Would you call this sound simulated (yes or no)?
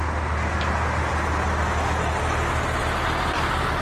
no